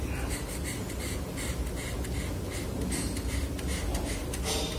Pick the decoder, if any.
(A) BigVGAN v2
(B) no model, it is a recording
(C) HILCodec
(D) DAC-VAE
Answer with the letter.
B